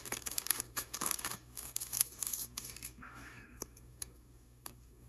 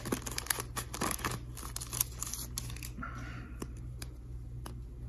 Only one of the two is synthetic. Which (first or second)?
first